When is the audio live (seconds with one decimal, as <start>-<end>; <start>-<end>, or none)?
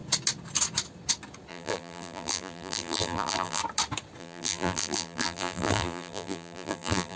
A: 0.0-1.5; 3.6-4.2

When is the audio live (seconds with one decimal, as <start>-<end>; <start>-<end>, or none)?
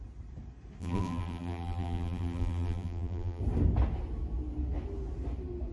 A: 0.0-0.8; 3.4-5.7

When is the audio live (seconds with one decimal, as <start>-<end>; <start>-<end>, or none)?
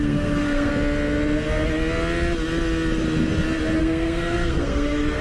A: 0.7-3.8